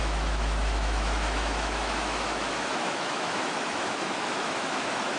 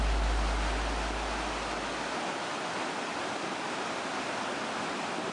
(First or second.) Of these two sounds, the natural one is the second